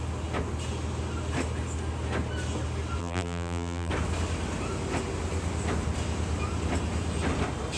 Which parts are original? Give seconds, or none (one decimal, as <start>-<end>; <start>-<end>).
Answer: 0.0-3.0; 3.9-7.8